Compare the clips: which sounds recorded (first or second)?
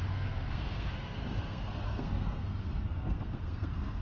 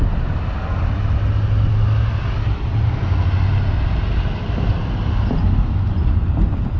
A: second